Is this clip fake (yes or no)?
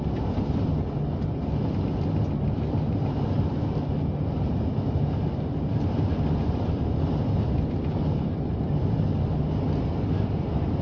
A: no